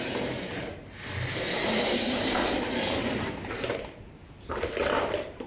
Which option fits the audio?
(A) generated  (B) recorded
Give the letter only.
A